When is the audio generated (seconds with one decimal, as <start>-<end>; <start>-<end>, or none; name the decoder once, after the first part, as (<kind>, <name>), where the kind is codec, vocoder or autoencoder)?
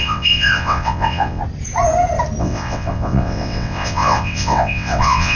0.0-1.4 (vocoder, WaveNeXt); 2.4-5.4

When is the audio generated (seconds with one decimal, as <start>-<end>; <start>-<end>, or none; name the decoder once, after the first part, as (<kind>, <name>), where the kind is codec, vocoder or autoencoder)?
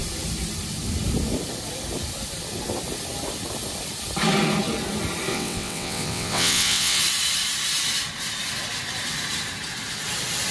5.3-7.0 (vocoder, WaveNeXt)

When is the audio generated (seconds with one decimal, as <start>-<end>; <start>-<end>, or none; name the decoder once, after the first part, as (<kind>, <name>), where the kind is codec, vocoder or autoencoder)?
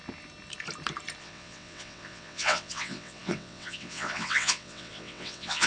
1.2-5.7 (vocoder, WaveNeXt)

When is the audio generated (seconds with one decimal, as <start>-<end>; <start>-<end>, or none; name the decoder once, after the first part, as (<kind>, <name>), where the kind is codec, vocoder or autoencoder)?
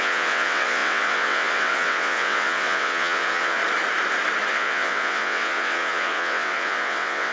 0.0-3.6 (vocoder, WaveNeXt); 4.5-7.3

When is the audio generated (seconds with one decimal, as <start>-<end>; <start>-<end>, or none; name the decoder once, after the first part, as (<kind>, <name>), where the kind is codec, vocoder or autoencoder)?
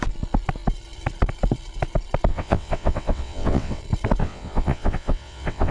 2.3-3.8 (vocoder, WaveNeXt); 4.2-5.7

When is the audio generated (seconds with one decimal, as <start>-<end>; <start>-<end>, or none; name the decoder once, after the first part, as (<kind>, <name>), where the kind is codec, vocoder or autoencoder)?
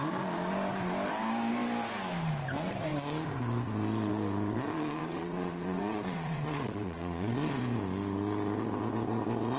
5.0-7.5 (vocoder, WaveNeXt)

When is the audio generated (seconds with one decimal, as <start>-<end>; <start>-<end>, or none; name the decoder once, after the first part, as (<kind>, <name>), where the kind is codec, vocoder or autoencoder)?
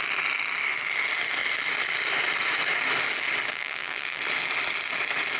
3.5-4.2 (vocoder, WaveNeXt)